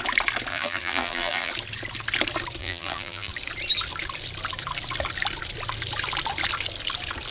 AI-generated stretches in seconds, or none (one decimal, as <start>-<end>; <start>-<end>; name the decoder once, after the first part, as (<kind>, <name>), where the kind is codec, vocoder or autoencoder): 0.5-1.5 (vocoder, BigVGAN v2); 2.6-3.3